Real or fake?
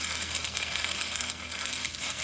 fake